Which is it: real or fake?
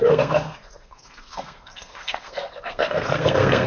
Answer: fake